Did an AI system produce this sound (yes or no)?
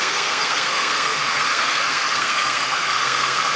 yes